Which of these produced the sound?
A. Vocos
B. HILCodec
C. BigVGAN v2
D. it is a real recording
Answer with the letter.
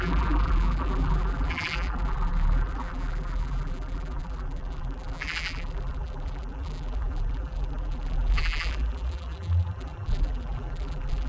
C